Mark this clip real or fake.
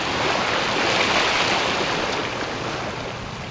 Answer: real